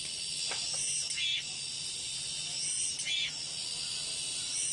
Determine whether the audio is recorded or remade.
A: recorded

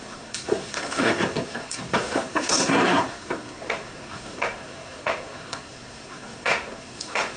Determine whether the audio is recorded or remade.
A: remade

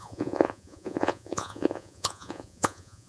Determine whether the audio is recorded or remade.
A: remade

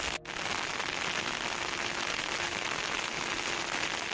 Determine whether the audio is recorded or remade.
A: recorded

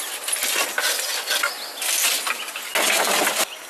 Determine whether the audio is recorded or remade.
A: recorded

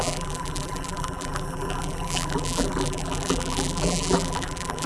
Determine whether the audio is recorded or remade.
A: remade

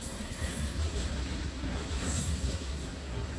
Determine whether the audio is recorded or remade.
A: remade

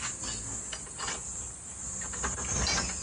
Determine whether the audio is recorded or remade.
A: recorded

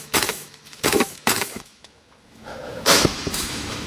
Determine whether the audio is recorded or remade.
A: remade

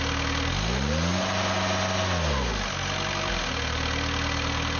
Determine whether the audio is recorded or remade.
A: recorded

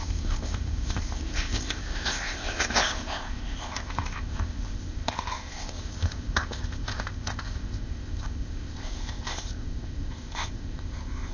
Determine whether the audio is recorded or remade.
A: remade